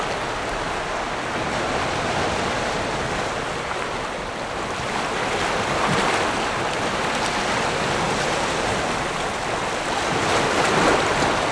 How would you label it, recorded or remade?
recorded